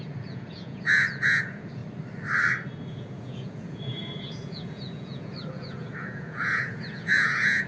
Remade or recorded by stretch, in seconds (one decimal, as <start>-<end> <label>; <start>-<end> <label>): 0.0-1.8 remade; 1.8-2.9 recorded; 2.9-7.7 remade